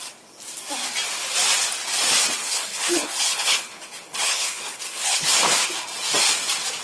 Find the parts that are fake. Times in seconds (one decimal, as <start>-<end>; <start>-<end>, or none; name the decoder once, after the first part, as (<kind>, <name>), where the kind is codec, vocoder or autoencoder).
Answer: 2.4-5.3 (codec, HILCodec)